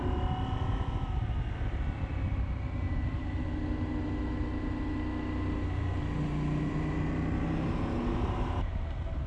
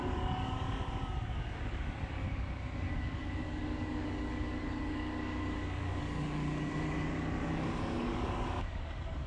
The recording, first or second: first